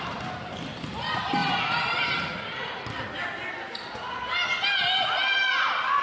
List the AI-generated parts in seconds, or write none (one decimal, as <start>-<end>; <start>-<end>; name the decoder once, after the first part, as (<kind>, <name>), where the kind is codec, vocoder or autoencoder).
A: none